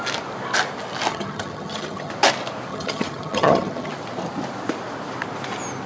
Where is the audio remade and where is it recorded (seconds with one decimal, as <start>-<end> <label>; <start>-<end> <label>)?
0.0-1.1 recorded; 1.1-2.1 remade; 2.1-2.7 recorded; 2.7-3.9 remade; 3.9-5.9 recorded